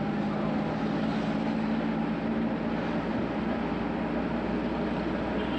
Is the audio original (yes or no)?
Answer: yes